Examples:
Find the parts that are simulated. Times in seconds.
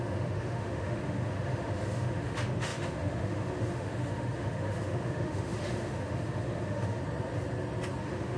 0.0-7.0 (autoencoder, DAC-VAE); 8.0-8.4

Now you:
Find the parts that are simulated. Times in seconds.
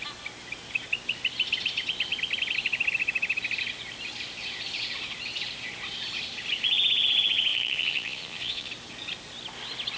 7.5-8.7 (vocoder, Vocos)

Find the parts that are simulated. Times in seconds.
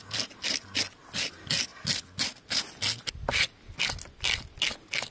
none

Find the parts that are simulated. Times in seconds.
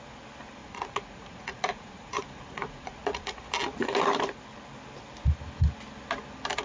0.6-3.5 (vocoder, Vocos)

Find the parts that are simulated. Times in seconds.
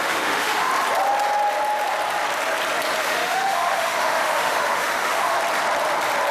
0.0-0.7 (autoencoder, DAC-VAE); 3.0-5.3